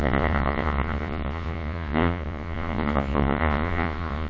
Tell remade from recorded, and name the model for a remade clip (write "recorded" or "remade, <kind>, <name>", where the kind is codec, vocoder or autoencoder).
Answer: remade, vocoder, Vocos